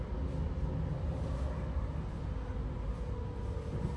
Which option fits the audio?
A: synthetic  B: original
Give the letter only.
B